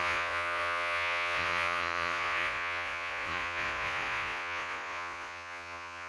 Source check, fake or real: fake